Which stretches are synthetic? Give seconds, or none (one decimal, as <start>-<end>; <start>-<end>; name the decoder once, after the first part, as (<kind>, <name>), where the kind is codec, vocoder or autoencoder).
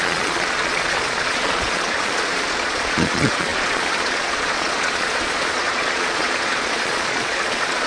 0.0-7.9 (vocoder, Vocos)